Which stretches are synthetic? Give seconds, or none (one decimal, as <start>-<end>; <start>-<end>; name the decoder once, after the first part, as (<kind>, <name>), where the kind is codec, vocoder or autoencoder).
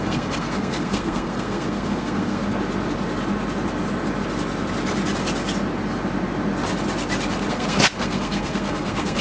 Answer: 0.0-2.4 (codec, SNAC); 7.5-9.2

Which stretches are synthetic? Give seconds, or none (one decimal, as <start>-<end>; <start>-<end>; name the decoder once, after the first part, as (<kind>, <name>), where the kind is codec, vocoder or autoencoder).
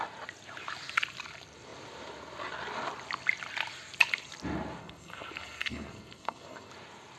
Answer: 4.8-6.7 (codec, SNAC)